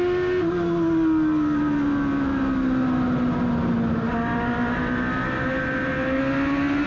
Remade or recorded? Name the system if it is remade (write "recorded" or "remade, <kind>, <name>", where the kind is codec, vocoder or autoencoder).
recorded